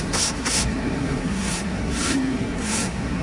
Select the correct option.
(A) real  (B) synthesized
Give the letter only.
B